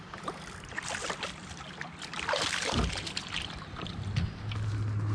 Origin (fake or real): real